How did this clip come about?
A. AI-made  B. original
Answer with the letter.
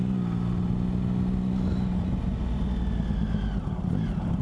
B